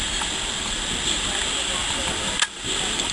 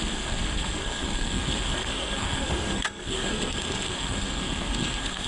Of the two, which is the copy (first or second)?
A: second